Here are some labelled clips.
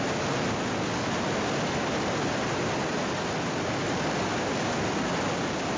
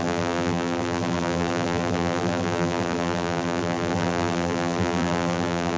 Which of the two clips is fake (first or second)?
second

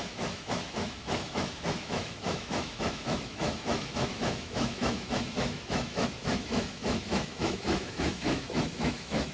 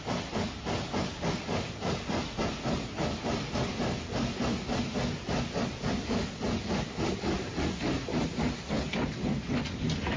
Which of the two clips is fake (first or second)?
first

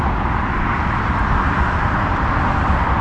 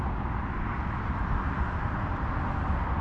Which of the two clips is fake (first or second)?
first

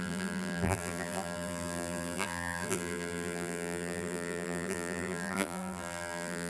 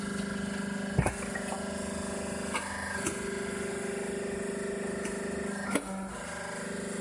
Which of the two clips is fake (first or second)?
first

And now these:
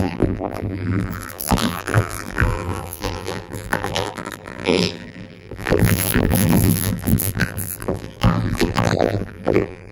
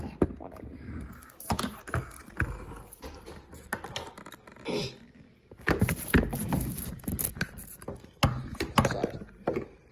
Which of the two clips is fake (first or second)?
first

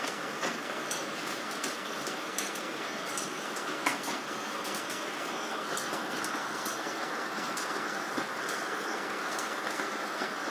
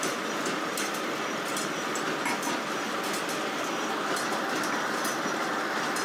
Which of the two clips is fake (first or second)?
first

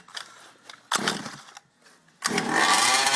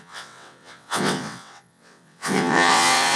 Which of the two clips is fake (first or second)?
second